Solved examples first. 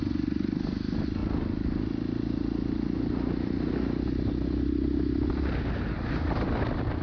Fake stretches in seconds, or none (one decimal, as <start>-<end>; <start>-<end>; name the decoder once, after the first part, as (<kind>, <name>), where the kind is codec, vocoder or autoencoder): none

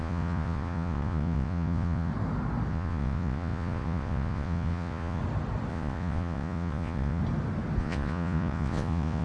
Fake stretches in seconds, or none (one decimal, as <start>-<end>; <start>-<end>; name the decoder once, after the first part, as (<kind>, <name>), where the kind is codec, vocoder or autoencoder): 0.0-2.1 (vocoder, Vocos); 2.7-5.2; 5.7-7.2; 7.8-9.2

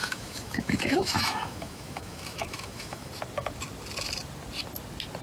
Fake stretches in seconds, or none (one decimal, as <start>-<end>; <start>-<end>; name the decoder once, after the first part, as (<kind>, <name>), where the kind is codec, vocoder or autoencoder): 0.0-3.1 (autoencoder, DAC-VAE)

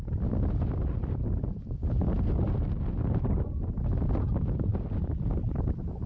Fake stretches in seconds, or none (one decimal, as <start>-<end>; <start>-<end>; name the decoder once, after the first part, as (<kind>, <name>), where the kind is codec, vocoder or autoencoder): none

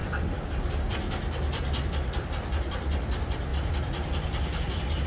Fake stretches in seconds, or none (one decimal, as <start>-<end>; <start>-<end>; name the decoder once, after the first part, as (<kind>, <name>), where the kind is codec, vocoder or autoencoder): none

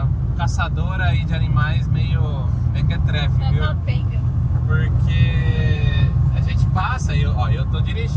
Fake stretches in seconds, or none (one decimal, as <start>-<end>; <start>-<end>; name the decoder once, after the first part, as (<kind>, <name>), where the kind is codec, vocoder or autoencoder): 3.7-4.6 (codec, DAC); 5.4-7.1